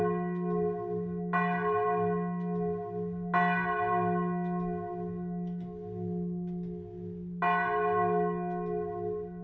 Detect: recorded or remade recorded